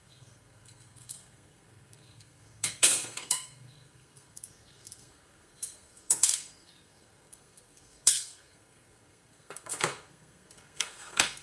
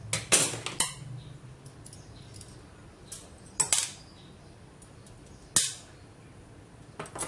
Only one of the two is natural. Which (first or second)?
second